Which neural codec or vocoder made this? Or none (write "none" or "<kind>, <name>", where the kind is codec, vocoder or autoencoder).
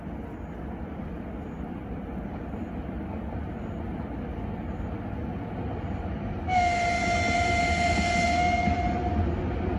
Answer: none